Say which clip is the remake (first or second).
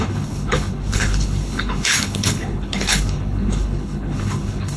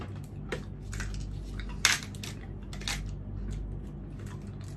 first